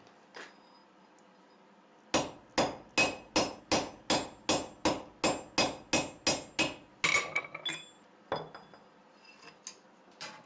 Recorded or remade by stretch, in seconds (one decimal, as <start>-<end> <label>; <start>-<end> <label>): 0.0-10.5 recorded